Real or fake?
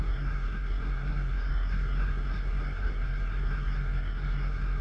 fake